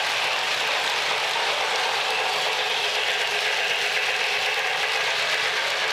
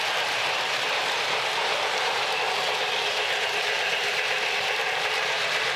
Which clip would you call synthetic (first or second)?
second